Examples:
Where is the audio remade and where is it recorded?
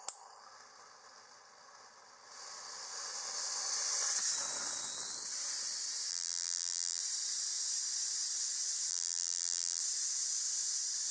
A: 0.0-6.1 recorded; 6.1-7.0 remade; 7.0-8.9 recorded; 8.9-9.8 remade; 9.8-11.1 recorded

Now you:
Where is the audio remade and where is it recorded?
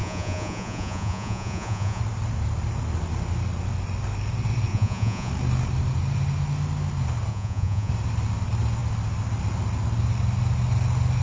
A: 0.0-2.0 remade; 2.0-4.7 recorded; 4.7-5.3 remade; 5.3-7.3 recorded; 7.3-7.9 remade; 7.9-11.2 recorded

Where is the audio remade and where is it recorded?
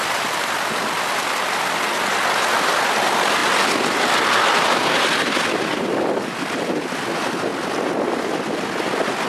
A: 0.0-9.3 recorded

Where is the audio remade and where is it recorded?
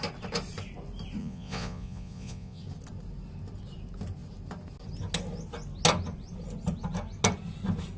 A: 0.0-1.2 recorded; 1.2-2.6 remade; 2.6-8.0 recorded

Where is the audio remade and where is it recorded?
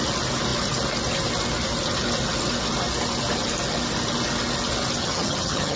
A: 0.0-5.0 recorded; 5.0-5.8 remade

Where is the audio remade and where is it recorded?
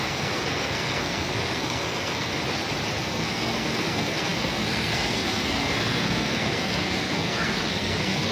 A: 0.0-2.3 remade; 2.3-3.0 recorded; 3.0-8.3 remade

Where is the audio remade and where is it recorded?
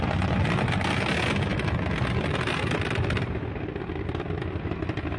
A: 0.0-5.2 recorded